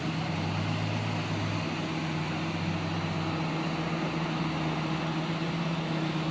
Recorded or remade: recorded